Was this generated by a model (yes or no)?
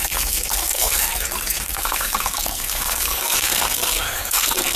yes